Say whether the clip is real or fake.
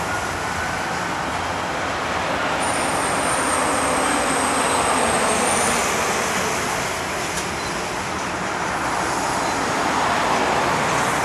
real